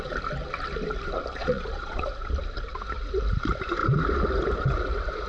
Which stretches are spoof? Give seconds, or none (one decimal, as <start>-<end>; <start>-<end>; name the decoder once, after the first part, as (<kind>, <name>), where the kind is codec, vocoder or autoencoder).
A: 1.4-2.1 (vocoder, Vocos)